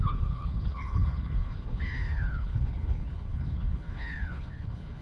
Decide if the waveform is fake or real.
fake